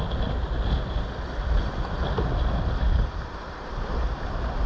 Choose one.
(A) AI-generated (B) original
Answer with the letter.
B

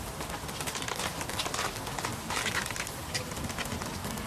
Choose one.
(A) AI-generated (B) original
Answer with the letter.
B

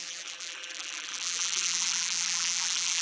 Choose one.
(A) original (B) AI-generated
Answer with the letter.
B